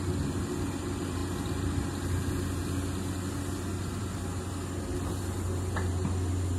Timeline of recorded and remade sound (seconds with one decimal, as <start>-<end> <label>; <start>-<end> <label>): 0.0-6.6 recorded